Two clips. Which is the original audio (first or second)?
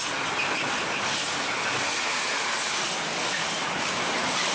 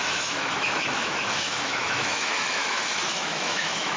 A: first